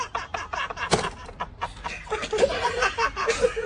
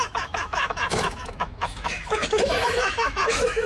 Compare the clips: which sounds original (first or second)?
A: first